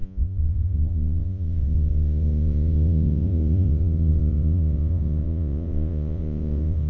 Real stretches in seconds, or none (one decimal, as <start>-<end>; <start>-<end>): none

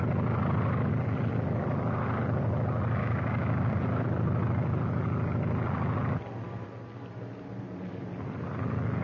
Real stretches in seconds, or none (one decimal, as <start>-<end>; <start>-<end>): 0.0-3.0; 3.8-9.0

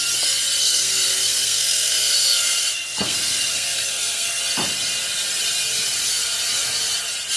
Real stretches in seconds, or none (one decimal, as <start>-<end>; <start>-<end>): 0.0-0.6; 4.4-7.4